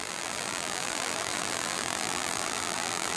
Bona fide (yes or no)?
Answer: no